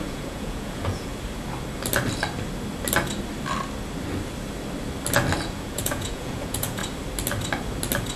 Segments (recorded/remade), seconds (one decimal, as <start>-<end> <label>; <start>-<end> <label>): 0.0-1.1 remade; 1.1-5.4 recorded; 5.4-6.8 remade; 6.8-8.2 recorded